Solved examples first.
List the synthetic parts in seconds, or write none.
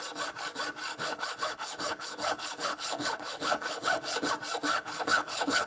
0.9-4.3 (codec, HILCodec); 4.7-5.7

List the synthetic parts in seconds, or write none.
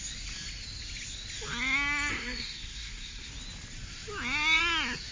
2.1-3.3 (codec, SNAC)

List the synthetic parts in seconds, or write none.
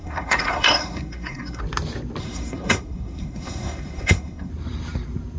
0.0-1.6 (codec, SNAC); 2.2-4.5